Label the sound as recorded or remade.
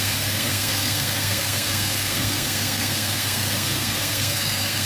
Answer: remade